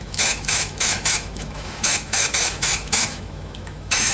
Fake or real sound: fake